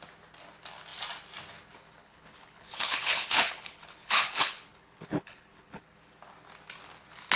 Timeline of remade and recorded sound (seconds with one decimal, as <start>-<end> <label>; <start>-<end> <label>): 0.0-2.0 recorded; 2.0-5.8 remade; 5.8-7.4 recorded